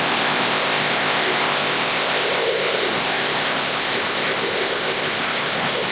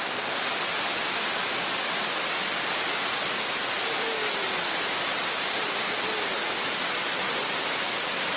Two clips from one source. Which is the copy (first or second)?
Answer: first